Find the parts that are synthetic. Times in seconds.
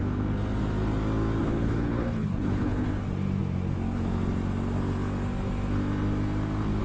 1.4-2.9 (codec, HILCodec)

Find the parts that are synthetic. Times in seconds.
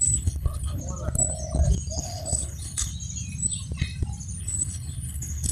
0.0-0.8 (codec, HILCodec); 2.0-2.9; 4.4-5.5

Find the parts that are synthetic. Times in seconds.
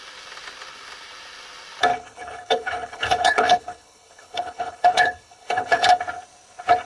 1.9-6.0 (codec, HILCodec)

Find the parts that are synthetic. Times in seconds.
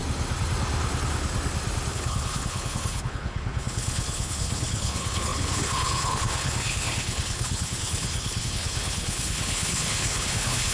1.9-10.7 (codec, HILCodec)